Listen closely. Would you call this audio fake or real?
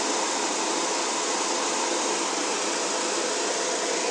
real